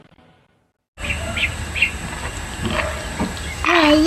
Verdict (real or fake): real